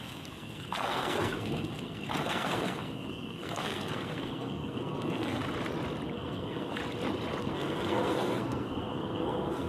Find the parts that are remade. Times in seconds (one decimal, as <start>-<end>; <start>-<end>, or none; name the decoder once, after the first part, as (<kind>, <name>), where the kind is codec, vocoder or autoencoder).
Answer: 0.0-5.4 (codec, SNAC); 6.1-6.8; 7.4-9.7